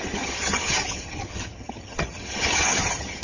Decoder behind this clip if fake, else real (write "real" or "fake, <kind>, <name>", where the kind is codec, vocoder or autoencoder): fake, vocoder, HiFi-GAN